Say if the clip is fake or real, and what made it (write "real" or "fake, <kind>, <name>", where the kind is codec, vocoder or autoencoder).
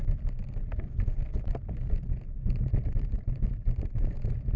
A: real